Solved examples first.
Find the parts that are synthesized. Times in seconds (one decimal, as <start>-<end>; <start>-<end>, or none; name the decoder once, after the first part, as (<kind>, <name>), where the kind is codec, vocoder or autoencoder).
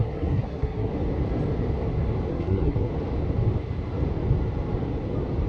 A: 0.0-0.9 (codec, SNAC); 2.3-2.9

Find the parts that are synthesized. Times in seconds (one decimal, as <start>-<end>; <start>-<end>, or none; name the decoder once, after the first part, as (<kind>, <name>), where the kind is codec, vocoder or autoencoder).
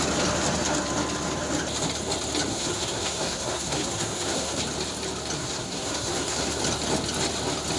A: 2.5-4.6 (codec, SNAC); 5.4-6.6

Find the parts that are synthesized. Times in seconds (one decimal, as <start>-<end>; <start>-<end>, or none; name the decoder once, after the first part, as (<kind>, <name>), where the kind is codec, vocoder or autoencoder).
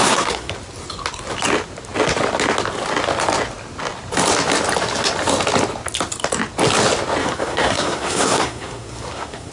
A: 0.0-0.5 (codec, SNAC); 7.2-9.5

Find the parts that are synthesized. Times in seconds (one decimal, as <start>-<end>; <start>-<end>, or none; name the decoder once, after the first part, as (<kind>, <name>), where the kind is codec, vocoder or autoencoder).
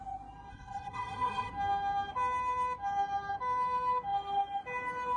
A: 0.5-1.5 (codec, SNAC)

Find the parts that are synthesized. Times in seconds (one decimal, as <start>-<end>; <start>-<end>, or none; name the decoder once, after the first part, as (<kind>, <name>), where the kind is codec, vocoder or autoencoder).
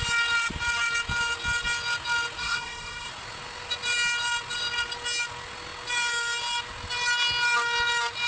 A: 2.4-3.1 (codec, SNAC)